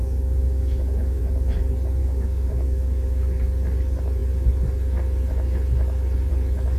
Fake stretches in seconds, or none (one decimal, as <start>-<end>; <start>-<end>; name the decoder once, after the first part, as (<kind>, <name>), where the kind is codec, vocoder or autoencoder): 0.0-1.2 (codec, DAC); 2.0-3.4